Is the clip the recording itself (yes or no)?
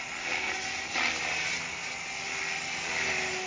yes